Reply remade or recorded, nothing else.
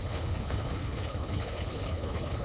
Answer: remade